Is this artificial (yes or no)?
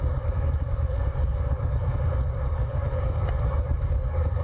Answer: yes